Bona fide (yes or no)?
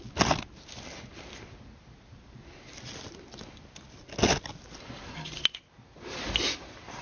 yes